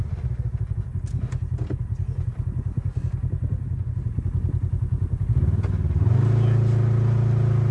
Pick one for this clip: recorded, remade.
recorded